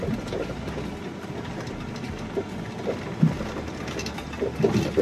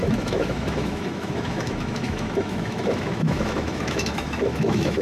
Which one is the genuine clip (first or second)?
first